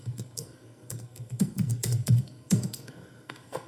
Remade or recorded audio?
remade